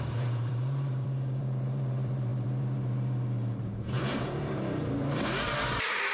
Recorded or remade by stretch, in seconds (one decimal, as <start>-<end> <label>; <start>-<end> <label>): 0.0-6.1 remade